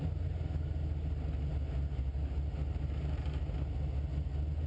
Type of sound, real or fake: real